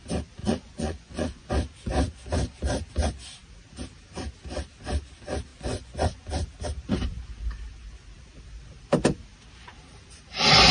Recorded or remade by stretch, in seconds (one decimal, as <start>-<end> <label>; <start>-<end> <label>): 0.0-0.4 recorded; 0.4-1.5 remade; 1.5-5.5 recorded; 5.5-6.2 remade; 6.2-10.7 recorded